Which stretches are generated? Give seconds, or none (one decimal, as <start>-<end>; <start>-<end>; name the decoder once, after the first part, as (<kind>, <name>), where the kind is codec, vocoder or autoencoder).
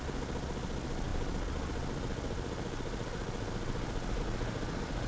none